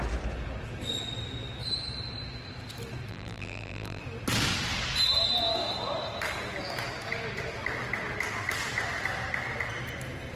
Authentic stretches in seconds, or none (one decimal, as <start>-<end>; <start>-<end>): 0.0-3.1; 4.0-10.4